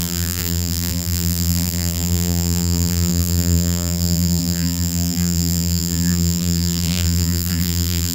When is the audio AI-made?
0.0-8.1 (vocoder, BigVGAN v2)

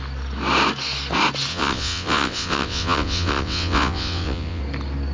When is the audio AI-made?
1.5-4.6 (vocoder, WaveNeXt)

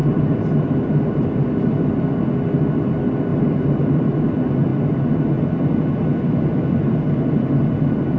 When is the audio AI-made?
0.0-2.0 (vocoder, BigVGAN v2); 3.3-4.2

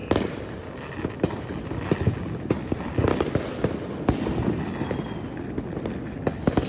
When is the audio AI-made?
none

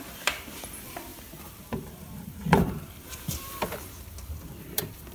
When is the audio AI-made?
0.0-5.1 (vocoder, BigVGAN v2)

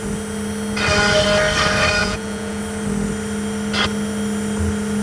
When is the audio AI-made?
2.0-2.6 (vocoder, Vocos)

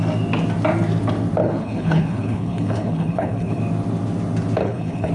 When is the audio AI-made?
1.4-3.6 (codec, HILCodec); 4.6-5.1

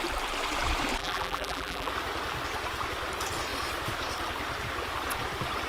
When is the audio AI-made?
1.0-1.9 (vocoder, BigVGAN v2)